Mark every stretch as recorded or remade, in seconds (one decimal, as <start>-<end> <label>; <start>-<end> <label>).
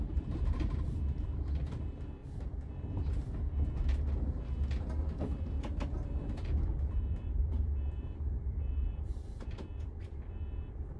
0.0-2.2 remade; 2.2-5.2 recorded; 5.2-11.0 remade